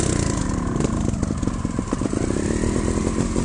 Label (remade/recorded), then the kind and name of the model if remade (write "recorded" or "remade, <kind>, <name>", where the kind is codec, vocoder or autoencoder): recorded